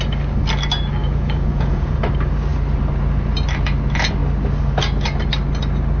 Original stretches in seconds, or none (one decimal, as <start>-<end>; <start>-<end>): 0.0-1.0; 2.0-6.0